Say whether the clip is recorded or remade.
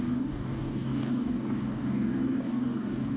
remade